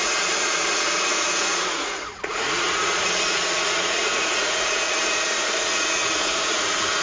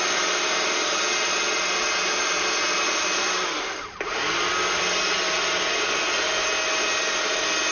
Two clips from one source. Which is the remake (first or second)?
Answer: first